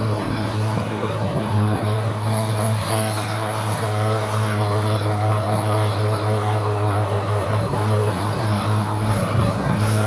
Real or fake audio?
fake